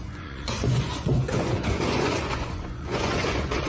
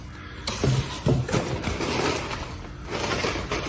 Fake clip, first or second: first